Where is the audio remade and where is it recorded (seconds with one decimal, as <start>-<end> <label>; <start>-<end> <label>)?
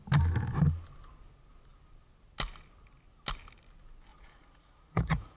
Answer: 0.0-4.1 recorded; 4.1-5.4 remade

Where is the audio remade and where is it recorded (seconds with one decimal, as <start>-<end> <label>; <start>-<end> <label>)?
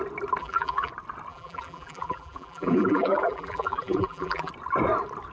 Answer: 0.0-0.4 recorded; 0.4-0.9 remade; 0.9-1.3 recorded; 1.3-4.5 remade; 4.5-5.3 recorded